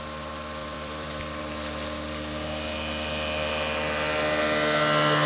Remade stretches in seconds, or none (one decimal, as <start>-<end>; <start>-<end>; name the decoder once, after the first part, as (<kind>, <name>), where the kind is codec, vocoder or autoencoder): 0.6-1.4 (vocoder, BigVGAN v2)